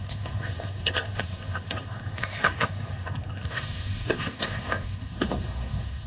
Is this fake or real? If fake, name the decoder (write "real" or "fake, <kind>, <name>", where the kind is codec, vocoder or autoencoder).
fake, codec, SNAC